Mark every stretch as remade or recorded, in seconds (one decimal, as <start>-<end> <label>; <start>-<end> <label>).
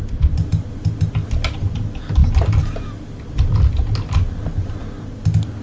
0.0-5.6 recorded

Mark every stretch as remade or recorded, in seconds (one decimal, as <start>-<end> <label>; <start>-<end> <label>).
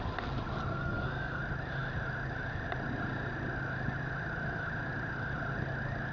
0.0-0.7 recorded; 0.7-1.4 remade; 1.4-6.1 recorded